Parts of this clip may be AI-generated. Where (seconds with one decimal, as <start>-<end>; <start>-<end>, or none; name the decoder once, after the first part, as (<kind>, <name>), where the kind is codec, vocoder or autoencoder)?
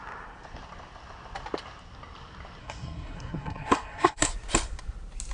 2.6-4.3 (codec, SNAC)